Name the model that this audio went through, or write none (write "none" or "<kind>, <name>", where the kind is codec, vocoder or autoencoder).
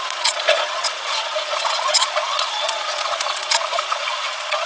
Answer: vocoder, Vocos